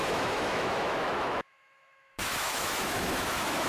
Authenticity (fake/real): fake